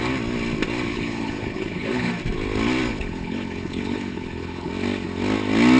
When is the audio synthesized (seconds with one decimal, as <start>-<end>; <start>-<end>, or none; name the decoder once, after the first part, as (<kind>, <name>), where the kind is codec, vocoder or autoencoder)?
0.9-2.1 (codec, HILCodec); 2.9-4.7